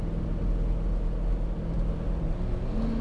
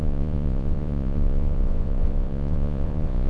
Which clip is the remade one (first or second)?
second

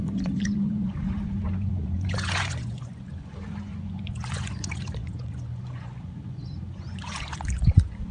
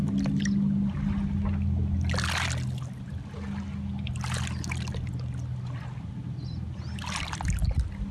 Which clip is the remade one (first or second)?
first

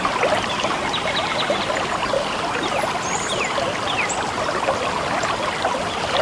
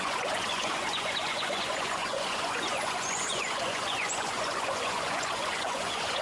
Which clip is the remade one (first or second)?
second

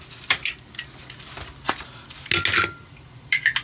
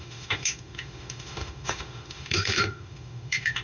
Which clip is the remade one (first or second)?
second